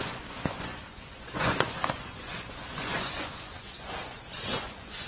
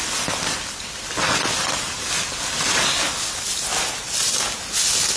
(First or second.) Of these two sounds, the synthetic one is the first